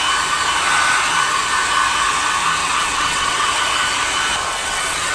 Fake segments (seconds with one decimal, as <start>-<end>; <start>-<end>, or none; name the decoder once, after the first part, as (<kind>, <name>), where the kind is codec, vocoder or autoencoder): 2.6-3.6 (vocoder, WaveNeXt); 4.5-5.1